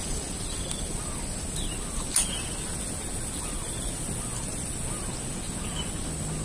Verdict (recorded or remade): recorded